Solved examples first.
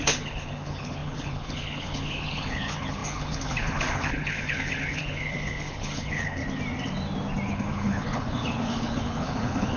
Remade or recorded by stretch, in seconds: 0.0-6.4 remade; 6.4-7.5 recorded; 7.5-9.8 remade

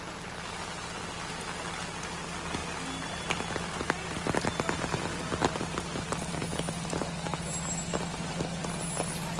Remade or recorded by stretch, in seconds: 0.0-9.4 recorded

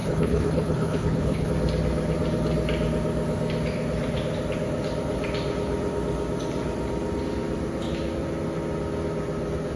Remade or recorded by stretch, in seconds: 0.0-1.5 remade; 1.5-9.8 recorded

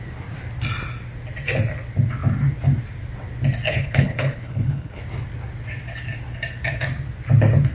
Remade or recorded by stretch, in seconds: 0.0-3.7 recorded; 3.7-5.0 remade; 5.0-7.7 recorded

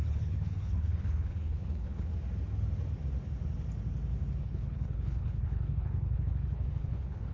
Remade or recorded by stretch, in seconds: 0.0-2.1 remade; 2.1-4.4 recorded; 4.4-7.3 remade

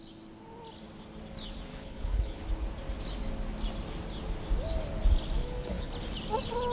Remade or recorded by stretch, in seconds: 0.0-1.7 recorded; 1.7-2.4 remade; 2.4-5.4 recorded; 5.4-5.9 remade; 5.9-6.7 recorded

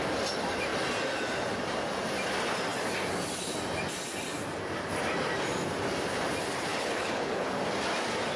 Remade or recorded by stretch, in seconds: 0.0-6.7 recorded; 6.7-7.6 remade; 7.6-8.4 recorded

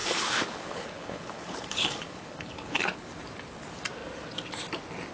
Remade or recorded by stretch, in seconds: 0.0-3.1 remade; 3.1-5.1 recorded